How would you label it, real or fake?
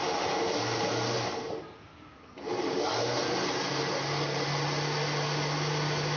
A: real